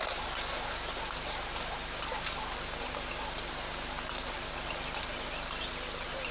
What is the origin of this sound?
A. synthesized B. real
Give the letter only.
B